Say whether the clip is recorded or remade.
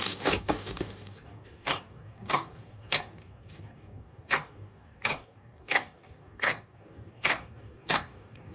remade